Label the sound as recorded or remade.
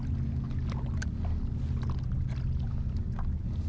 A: recorded